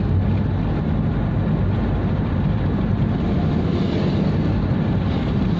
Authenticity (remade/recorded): recorded